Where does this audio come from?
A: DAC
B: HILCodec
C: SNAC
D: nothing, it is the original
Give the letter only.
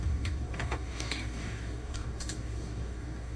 A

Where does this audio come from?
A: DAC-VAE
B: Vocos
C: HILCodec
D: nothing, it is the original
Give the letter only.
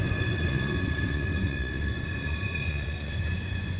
B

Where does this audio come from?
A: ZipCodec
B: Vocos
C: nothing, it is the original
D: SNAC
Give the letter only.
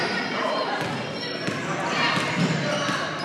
C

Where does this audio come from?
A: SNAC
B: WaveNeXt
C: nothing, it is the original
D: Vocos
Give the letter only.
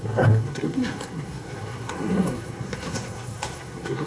A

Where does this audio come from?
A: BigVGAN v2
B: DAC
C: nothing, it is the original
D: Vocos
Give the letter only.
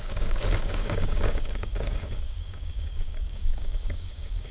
B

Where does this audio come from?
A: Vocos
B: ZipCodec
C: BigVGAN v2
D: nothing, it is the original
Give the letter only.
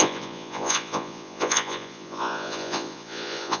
A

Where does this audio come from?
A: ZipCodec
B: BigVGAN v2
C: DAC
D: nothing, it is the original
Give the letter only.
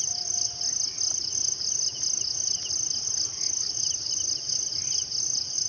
D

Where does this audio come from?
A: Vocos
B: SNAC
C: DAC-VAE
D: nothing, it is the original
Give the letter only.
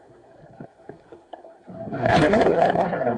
B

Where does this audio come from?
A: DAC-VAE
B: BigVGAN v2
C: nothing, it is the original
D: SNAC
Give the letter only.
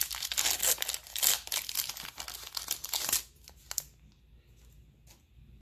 C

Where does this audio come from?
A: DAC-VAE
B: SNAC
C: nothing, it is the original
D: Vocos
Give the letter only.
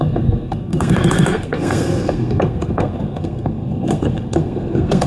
B